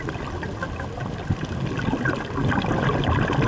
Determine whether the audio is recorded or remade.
recorded